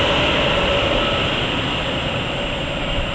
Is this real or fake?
real